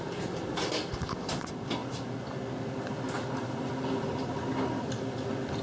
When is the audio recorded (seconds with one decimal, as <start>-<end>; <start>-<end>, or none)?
0.0-5.6